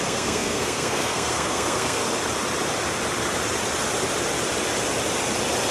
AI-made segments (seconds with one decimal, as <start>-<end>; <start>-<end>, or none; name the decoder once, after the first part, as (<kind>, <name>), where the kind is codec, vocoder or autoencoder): 0.0-2.0 (codec, SNAC)